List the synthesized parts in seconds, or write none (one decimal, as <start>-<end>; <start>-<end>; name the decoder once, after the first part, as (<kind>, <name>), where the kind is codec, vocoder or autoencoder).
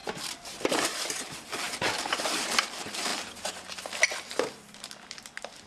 0.0-3.1 (vocoder, BigVGAN v2)